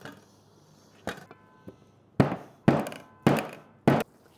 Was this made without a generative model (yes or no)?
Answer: yes